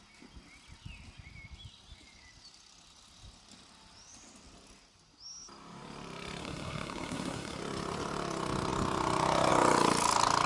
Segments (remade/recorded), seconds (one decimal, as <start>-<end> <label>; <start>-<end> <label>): 0.0-6.4 recorded; 6.4-7.6 remade; 7.6-10.5 recorded